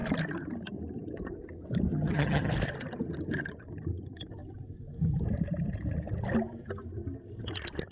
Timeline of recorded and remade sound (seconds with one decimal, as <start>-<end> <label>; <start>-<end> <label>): 0.0-1.9 recorded; 1.9-2.5 remade; 2.5-7.9 recorded